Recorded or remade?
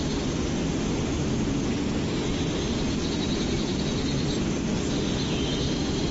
recorded